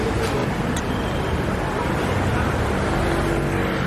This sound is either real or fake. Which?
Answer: real